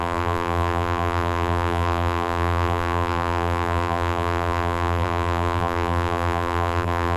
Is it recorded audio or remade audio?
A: remade